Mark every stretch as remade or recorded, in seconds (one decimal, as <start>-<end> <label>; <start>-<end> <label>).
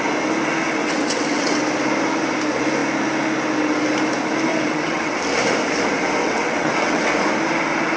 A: 0.0-0.8 recorded; 0.8-1.6 remade; 1.6-4.5 recorded; 4.5-5.2 remade; 5.2-6.2 recorded; 6.2-7.1 remade; 7.1-8.0 recorded